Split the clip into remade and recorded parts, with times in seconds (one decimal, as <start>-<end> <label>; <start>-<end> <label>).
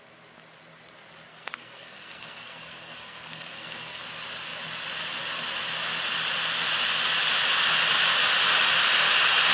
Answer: 0.0-1.3 recorded; 1.3-4.0 remade; 4.0-9.5 recorded